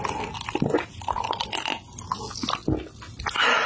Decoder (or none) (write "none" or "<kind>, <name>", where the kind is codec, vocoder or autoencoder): none